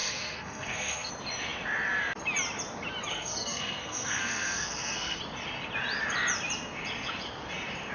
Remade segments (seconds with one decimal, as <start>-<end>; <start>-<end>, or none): 0.0-1.1; 3.1-5.2